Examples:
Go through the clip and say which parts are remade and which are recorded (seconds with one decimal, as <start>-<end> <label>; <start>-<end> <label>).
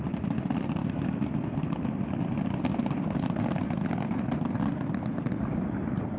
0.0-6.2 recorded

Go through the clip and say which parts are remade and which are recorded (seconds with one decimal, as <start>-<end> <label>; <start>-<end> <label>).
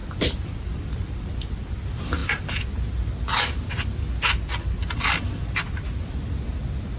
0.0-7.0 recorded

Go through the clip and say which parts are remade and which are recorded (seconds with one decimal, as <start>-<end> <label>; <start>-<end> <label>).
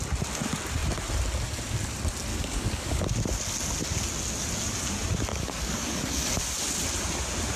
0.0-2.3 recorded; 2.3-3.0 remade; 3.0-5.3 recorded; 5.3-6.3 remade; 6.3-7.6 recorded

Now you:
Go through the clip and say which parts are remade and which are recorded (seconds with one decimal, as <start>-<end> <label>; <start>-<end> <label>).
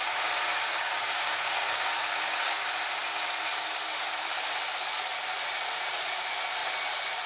0.0-0.5 recorded; 0.5-2.6 remade; 2.6-7.3 recorded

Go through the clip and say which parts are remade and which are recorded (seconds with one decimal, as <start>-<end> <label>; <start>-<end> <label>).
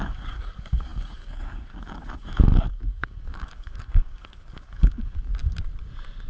0.0-5.3 remade; 5.3-6.3 recorded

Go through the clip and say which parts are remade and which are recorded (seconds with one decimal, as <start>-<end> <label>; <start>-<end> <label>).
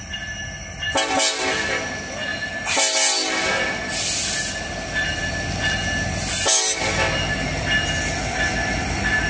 0.0-9.3 recorded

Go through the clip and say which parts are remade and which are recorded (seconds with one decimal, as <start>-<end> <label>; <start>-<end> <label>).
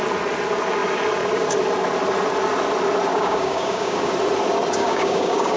0.0-3.1 recorded; 3.1-4.1 remade; 4.1-4.8 recorded; 4.8-5.6 remade